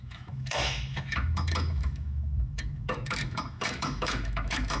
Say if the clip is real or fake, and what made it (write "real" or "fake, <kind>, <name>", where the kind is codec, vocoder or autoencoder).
fake, autoencoder, DAC-VAE